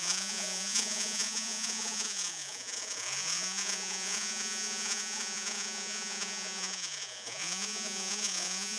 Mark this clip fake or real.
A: fake